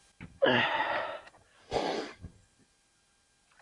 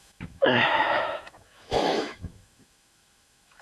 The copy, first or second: second